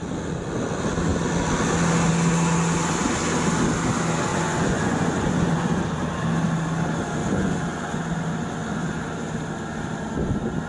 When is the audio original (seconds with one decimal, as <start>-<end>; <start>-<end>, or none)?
0.0-4.3; 5.8-7.2; 8.0-10.7